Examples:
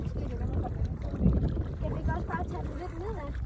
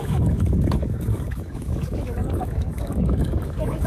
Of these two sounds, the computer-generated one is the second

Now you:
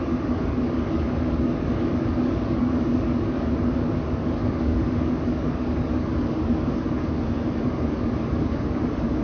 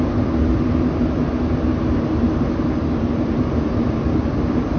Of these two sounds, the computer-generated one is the first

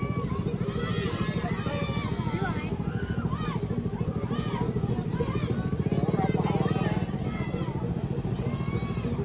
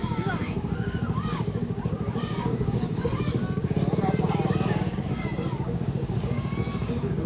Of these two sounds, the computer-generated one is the second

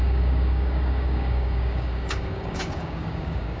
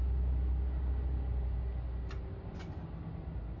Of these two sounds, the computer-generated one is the first